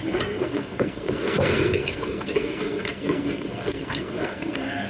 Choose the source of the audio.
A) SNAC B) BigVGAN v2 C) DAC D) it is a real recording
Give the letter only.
A